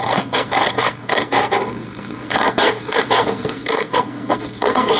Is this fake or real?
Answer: fake